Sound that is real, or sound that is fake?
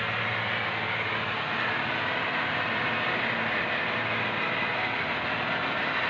real